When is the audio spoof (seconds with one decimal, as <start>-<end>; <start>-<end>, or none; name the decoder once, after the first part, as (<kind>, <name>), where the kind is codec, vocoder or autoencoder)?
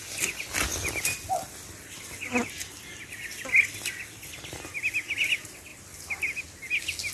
none